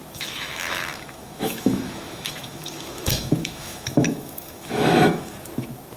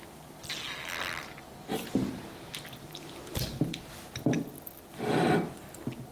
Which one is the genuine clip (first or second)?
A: second